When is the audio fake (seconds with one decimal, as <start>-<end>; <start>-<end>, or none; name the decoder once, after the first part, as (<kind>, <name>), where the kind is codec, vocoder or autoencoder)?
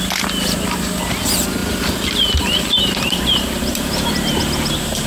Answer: 1.6-4.1 (vocoder, BigVGAN v2)